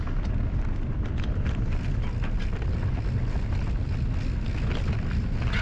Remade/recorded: recorded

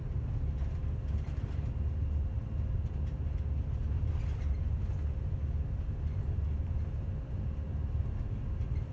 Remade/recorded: recorded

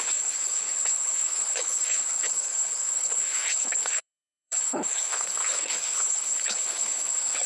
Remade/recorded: remade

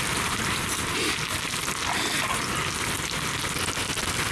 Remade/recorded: recorded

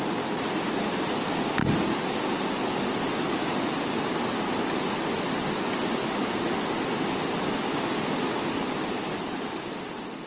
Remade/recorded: recorded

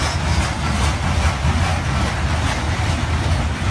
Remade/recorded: recorded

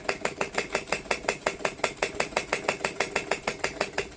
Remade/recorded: recorded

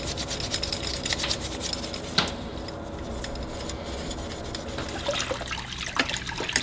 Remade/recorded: recorded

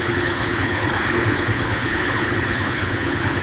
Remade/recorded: remade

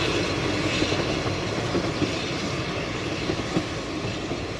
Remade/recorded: recorded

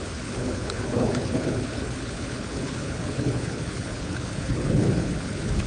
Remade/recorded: remade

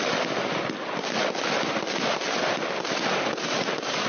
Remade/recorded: recorded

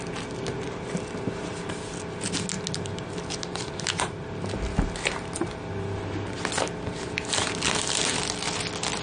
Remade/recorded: recorded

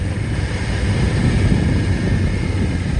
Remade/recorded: recorded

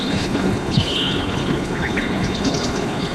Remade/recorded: remade